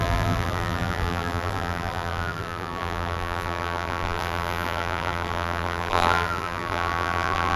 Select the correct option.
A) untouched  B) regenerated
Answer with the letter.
B